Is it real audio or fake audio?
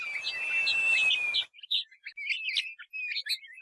real